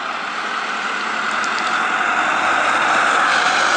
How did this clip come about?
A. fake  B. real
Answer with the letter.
B